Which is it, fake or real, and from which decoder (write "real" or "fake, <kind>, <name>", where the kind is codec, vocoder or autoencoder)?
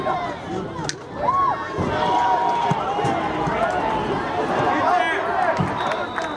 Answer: real